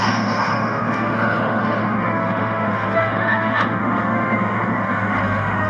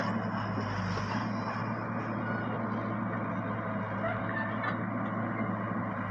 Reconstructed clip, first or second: first